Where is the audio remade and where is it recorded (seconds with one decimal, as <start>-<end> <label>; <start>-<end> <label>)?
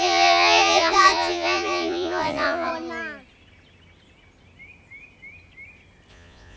0.0-2.7 remade; 2.7-6.1 recorded; 6.1-6.6 remade